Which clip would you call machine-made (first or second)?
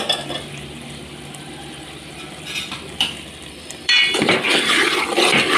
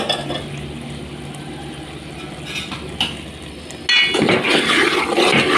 first